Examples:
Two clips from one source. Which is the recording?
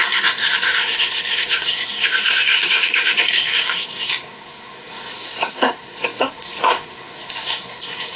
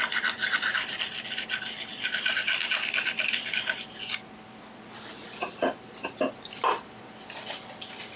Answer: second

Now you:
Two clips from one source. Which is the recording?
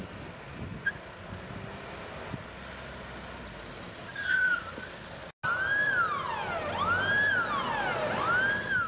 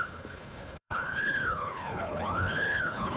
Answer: first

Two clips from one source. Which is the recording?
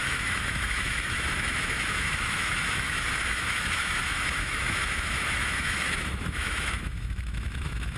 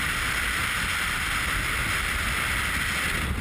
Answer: second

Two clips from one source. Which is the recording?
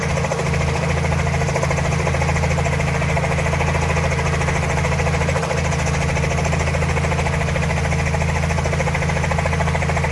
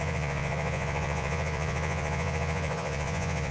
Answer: first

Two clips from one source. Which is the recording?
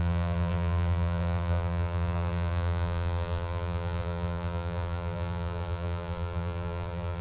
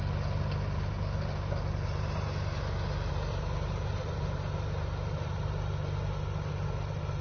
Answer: second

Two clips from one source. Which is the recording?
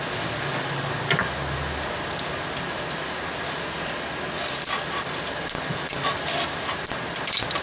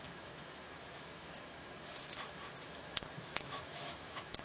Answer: first